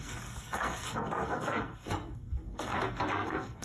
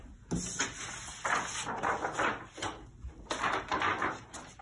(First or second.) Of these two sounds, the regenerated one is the first